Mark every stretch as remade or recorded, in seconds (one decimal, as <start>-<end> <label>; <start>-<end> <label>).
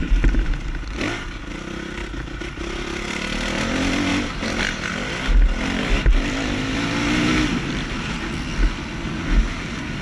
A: 0.0-10.0 recorded